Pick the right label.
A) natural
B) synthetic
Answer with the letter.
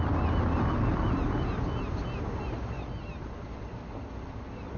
A